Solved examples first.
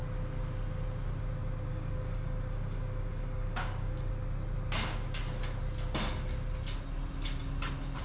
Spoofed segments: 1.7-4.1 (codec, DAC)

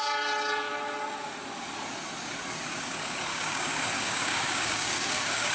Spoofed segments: 3.3-5.5 (codec, DAC)